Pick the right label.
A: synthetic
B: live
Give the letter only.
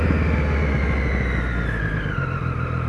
B